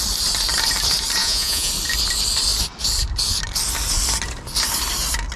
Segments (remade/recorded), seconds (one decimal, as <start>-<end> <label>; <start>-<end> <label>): 0.0-1.2 recorded; 1.2-1.7 remade; 1.7-5.4 recorded